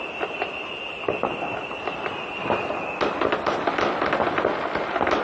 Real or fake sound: real